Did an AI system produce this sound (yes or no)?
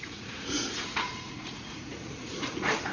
yes